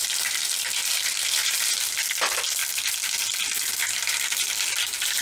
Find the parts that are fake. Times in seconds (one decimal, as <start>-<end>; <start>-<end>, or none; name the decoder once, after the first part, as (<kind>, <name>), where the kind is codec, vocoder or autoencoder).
0.9-1.9 (vocoder, BigVGAN v2); 3.8-5.2